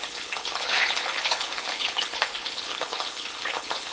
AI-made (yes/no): yes